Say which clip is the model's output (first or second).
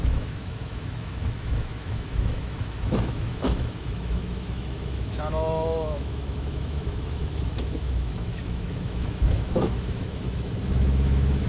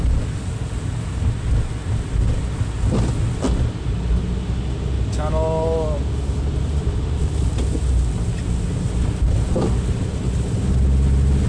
first